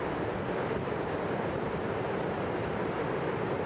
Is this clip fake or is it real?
real